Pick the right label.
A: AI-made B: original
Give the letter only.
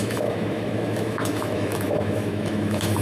A